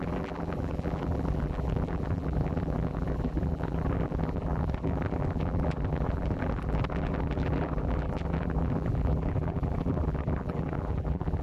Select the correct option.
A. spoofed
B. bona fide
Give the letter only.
A